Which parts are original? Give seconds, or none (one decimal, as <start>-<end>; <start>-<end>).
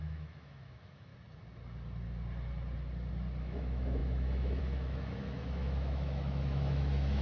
1.1-3.4